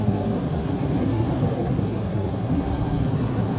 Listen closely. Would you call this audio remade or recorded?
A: remade